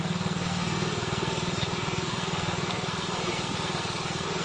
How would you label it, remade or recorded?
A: remade